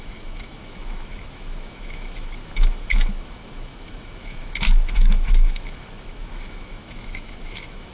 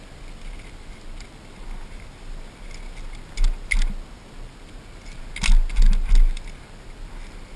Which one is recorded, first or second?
second